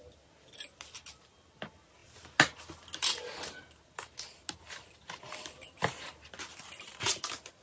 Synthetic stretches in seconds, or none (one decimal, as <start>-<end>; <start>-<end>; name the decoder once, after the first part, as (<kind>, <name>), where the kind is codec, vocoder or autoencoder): none